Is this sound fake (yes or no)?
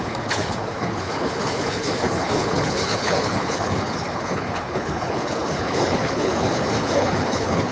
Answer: yes